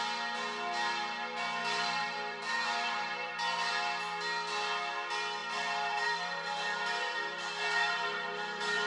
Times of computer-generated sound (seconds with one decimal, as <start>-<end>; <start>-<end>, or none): 1.6-3.7; 5.4-8.9